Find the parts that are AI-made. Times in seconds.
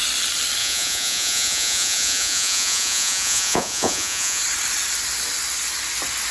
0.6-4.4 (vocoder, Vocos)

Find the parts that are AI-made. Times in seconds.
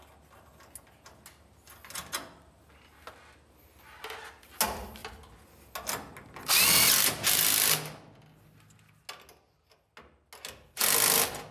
none